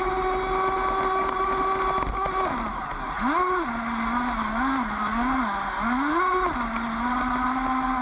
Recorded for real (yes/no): yes